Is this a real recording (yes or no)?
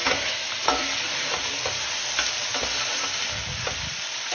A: yes